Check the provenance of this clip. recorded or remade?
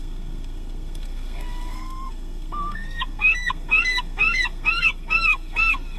remade